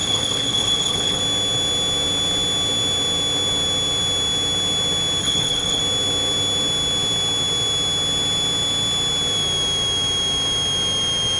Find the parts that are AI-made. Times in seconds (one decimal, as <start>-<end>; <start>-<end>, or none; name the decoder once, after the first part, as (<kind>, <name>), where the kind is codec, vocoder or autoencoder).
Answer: 0.0-1.2 (codec, HILCodec); 5.2-5.8